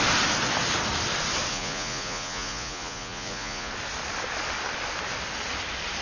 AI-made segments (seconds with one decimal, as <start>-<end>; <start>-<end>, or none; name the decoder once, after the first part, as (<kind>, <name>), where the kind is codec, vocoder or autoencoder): 1.5-3.7 (vocoder, Vocos)

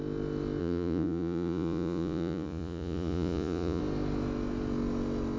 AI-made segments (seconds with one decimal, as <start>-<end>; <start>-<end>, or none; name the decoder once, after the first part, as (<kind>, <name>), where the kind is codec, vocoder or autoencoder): 0.6-3.8 (vocoder, Vocos)

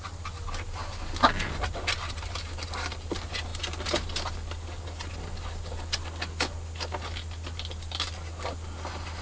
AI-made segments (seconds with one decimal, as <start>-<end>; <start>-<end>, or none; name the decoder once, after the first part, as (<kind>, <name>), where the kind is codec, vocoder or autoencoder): none

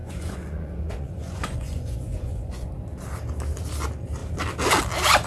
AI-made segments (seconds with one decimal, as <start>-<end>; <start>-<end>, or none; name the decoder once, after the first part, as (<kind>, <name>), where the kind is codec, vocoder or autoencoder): 0.0-2.7 (vocoder, Vocos)

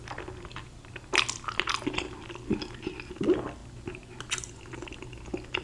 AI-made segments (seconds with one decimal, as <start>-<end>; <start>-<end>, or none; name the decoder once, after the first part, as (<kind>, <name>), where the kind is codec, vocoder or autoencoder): none

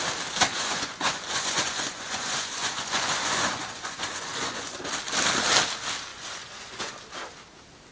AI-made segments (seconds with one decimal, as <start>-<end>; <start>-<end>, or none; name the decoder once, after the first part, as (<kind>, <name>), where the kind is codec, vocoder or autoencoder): 0.5-4.9 (vocoder, Vocos); 6.1-6.9

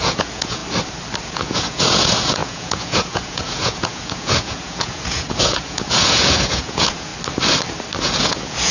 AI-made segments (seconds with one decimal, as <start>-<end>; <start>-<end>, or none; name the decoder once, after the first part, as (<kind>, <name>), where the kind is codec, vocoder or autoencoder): 0.0-0.6 (vocoder, Vocos); 1.2-7.1; 8.0-8.7